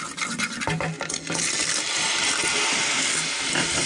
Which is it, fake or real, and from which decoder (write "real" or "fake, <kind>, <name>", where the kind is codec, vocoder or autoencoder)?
real